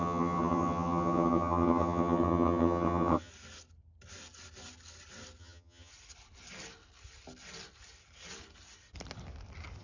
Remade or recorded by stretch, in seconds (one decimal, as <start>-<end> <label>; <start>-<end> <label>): 0.0-3.3 remade; 3.3-5.4 recorded; 5.4-5.9 remade; 5.9-9.8 recorded